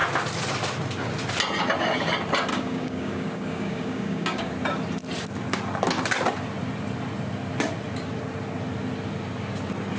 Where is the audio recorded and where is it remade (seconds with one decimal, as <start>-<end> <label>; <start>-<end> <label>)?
0.0-2.5 recorded; 2.5-4.5 remade; 4.5-10.0 recorded